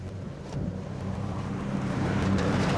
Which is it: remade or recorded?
remade